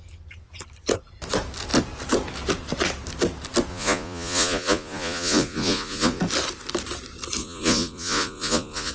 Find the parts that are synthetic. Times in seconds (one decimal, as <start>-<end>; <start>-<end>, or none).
3.7-6.2; 7.4-8.9